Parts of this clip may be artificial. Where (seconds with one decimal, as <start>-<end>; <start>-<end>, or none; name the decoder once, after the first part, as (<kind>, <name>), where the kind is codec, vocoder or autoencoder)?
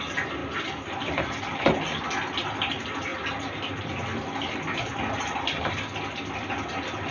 none